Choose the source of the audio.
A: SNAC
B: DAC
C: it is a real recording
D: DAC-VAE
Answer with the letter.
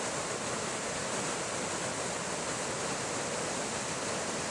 C